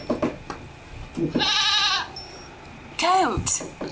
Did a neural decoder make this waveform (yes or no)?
yes